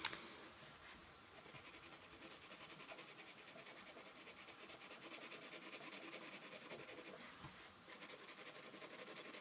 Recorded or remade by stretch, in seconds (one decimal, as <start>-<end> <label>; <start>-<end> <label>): 0.0-1.0 remade; 1.0-1.7 recorded; 1.7-9.4 remade